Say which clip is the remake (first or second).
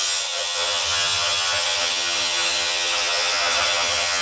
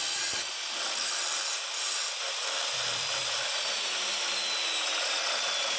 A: first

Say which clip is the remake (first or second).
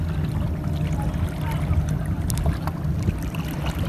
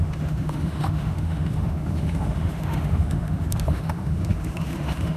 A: second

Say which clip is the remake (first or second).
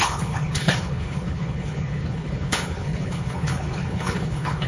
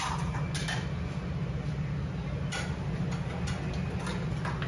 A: first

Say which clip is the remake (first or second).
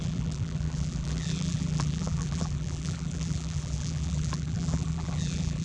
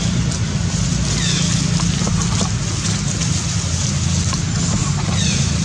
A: first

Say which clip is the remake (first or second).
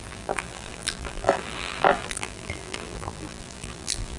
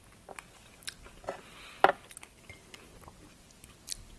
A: first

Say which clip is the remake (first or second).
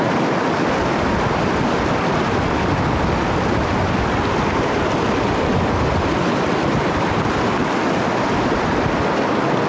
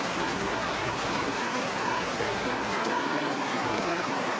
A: second